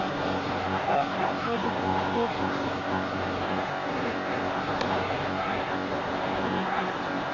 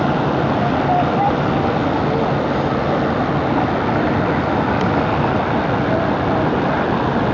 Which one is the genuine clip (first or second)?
second